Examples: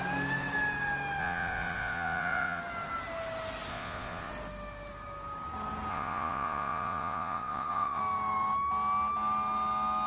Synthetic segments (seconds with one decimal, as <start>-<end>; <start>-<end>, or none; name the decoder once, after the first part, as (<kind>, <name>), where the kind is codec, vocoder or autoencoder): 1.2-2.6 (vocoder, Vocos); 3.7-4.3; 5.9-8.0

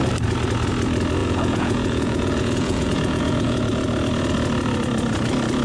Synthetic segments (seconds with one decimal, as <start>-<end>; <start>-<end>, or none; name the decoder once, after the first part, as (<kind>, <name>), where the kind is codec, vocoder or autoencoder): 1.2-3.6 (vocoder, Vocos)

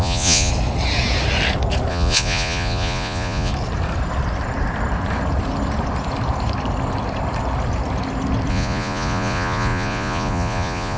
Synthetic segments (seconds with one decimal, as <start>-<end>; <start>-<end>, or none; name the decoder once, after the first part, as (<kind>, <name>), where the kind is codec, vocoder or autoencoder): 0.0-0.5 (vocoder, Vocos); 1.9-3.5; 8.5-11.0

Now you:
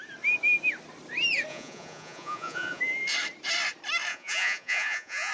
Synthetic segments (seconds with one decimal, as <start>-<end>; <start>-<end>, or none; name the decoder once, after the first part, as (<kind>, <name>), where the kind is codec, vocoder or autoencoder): 1.5-2.8 (vocoder, Vocos); 4.1-5.3

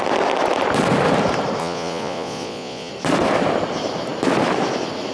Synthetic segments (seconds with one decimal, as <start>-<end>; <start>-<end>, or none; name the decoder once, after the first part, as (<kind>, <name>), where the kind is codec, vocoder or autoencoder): 1.6-2.9 (vocoder, Vocos)